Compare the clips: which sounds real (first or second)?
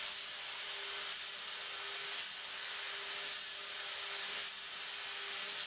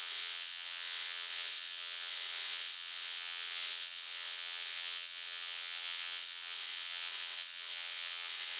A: first